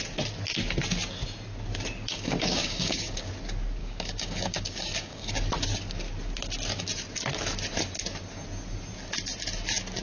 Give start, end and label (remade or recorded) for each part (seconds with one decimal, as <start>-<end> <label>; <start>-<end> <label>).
0.0-2.0 recorded; 2.0-3.3 remade; 3.3-3.8 recorded; 3.8-5.3 remade; 5.3-10.0 recorded